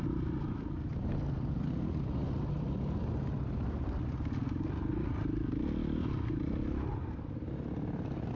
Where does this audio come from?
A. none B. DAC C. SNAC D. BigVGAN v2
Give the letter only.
A